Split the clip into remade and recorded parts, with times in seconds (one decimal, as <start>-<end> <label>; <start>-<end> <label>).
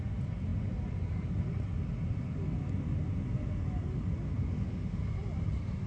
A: 0.0-4.5 recorded; 4.5-5.0 remade; 5.0-5.9 recorded